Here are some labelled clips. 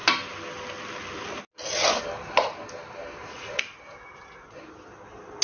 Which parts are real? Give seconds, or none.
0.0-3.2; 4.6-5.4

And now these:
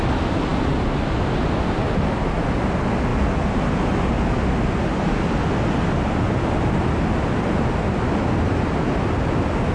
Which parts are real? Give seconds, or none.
0.0-9.7

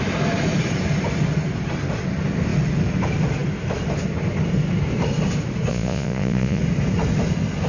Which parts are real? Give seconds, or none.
0.0-5.7; 6.6-7.7

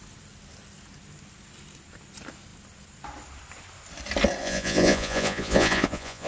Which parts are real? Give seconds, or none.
0.0-4.4

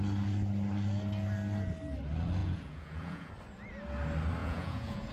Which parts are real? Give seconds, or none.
0.0-2.4; 3.3-4.4

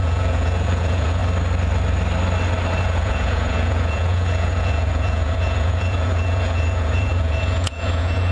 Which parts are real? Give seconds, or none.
1.2-2.8